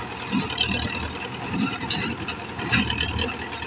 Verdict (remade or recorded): recorded